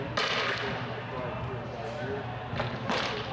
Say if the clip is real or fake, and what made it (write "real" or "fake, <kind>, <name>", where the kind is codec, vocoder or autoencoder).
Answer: real